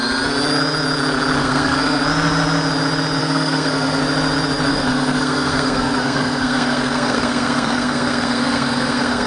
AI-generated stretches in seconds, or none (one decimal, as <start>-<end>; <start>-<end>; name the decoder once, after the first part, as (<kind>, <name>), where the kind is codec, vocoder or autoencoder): 1.4-2.0 (codec, SNAC); 3.2-4.0; 4.7-9.3